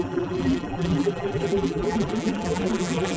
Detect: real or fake fake